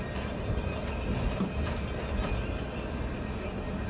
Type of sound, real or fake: real